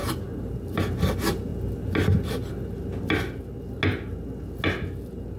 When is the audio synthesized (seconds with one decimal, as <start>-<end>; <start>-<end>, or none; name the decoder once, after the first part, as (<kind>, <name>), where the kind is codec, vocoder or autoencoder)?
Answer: none